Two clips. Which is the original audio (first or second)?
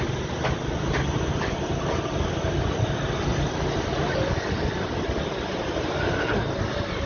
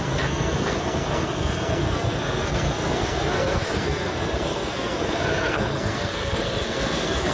first